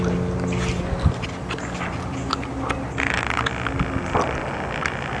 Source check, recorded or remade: recorded